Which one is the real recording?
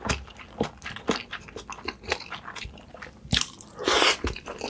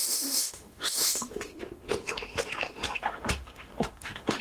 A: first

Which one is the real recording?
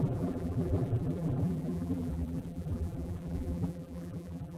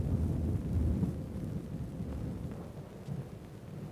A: second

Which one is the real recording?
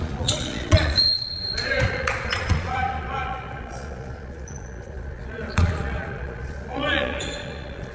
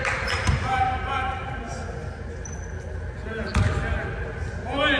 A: second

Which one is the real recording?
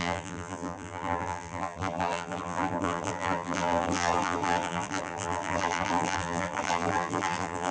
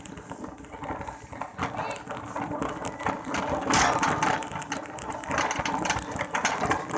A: second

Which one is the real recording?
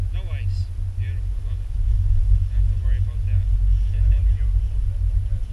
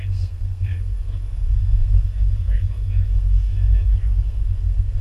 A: first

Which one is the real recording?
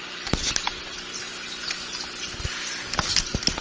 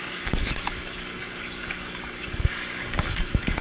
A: first